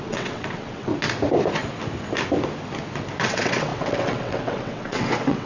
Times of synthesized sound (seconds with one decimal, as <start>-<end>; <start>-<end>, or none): 0.0-0.9; 3.3-5.5